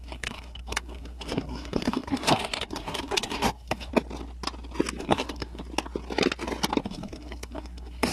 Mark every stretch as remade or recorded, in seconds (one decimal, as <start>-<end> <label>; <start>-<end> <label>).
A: 0.0-3.9 remade; 3.9-5.0 recorded; 5.0-5.6 remade; 5.6-6.8 recorded; 6.8-8.1 remade